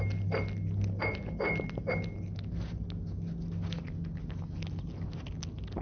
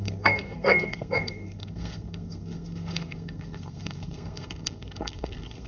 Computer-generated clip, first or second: second